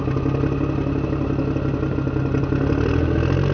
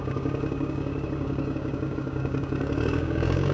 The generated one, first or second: second